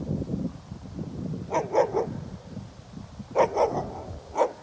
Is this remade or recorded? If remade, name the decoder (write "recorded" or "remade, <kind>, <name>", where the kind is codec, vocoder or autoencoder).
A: recorded